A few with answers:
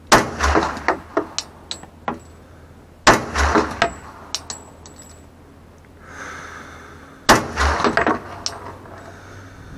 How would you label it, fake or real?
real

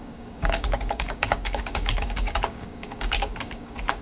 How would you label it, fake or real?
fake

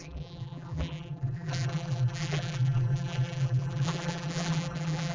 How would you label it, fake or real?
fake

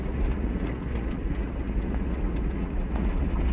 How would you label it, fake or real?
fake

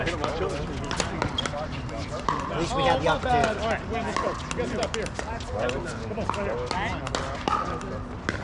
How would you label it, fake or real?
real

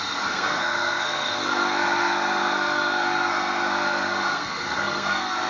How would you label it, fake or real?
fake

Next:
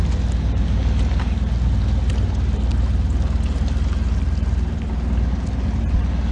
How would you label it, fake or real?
real